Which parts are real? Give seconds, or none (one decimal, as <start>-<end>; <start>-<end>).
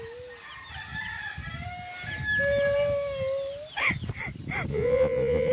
0.0-4.7